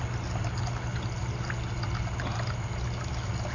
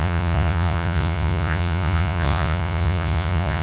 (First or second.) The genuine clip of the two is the first